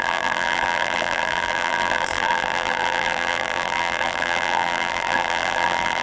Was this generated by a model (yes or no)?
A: yes